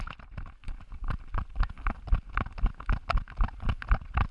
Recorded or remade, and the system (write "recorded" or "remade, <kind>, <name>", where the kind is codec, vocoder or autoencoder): recorded